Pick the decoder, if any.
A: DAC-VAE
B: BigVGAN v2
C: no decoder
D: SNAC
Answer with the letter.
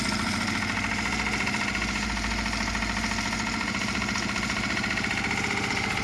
C